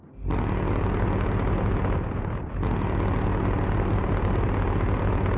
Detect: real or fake real